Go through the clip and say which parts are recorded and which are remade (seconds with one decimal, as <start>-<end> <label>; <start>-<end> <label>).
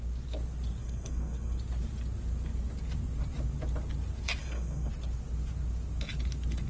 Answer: 0.0-0.8 recorded; 0.8-1.6 remade; 1.6-4.4 recorded; 4.4-4.9 remade; 4.9-6.7 recorded